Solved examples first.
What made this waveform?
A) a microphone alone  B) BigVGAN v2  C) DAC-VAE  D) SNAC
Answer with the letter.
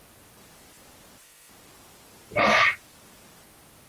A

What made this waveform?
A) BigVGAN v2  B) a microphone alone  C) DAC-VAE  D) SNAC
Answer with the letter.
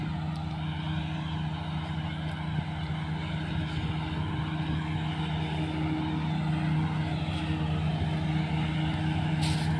B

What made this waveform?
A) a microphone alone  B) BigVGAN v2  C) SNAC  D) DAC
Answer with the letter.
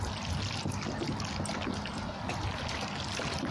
A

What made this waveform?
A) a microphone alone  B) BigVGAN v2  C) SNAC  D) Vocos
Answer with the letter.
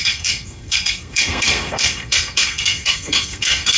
C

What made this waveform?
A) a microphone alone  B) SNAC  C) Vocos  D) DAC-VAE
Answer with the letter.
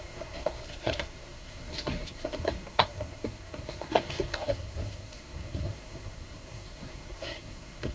B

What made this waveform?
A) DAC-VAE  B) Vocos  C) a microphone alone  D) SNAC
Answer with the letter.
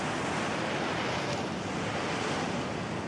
C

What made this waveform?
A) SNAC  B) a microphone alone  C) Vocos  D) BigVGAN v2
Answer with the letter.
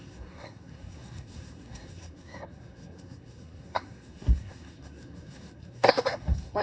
A